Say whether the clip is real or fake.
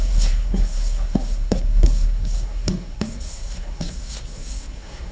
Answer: fake